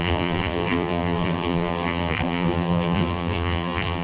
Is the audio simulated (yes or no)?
yes